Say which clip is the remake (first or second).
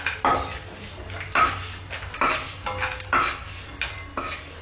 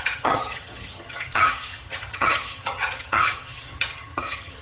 second